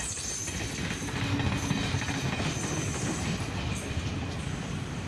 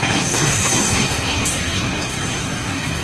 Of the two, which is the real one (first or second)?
first